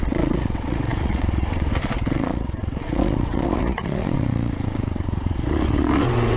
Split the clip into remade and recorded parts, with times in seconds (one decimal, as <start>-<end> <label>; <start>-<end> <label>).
0.0-6.4 remade